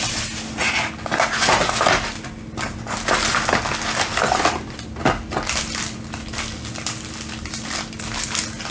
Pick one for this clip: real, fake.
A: real